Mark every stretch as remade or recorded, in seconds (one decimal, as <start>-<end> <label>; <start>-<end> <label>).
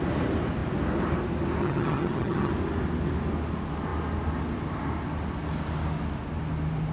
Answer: 0.0-1.6 recorded; 1.6-2.5 remade; 2.5-6.9 recorded